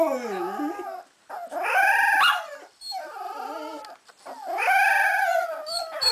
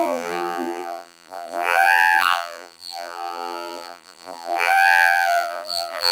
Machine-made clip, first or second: second